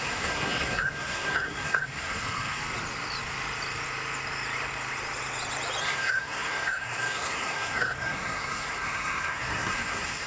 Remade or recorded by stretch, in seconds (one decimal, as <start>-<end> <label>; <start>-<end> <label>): 0.0-2.6 remade; 2.6-5.8 recorded; 5.8-10.3 remade